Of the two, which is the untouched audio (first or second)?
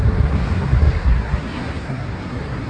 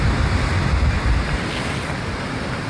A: second